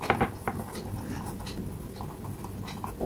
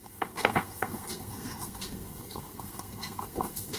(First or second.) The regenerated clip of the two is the second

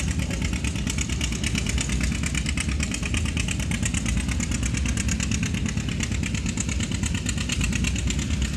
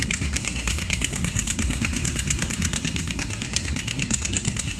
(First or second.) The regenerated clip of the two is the second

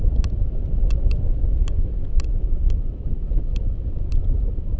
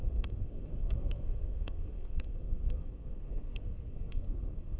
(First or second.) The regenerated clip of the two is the second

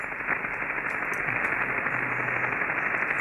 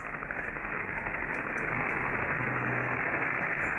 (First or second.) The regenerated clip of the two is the second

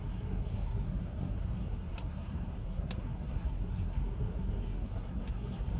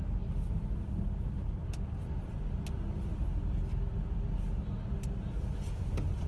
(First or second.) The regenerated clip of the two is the first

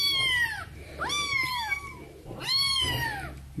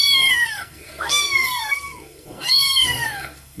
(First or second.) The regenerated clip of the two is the second